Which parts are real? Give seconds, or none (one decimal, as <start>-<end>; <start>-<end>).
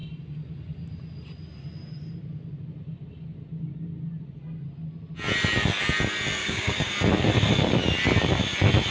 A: 0.0-6.4; 6.9-8.9